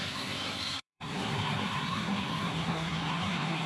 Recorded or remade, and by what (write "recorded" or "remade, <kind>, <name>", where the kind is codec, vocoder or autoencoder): remade, codec, SNAC